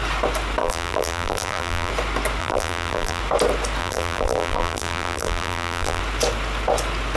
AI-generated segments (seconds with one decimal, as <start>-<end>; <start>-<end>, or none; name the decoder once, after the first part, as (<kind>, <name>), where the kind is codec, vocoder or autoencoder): 0.6-1.9 (vocoder, BigVGAN v2); 2.4-3.2; 3.8-6.0